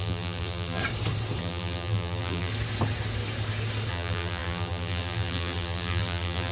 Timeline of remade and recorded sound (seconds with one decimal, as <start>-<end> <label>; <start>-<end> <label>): 0.0-0.8 remade; 0.8-1.4 recorded; 1.4-2.5 remade; 2.5-3.9 recorded; 3.9-6.5 remade